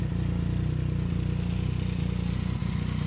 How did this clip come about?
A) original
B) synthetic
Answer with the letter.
A